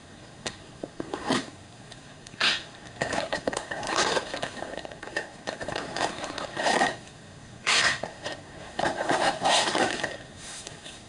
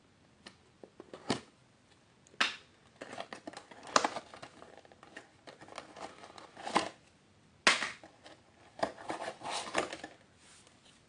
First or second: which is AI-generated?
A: first